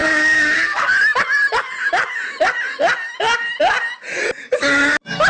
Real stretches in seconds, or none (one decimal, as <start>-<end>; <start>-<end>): 0.9-5.3